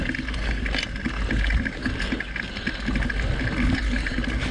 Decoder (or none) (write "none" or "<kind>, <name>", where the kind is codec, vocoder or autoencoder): none